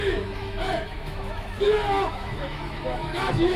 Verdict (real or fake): fake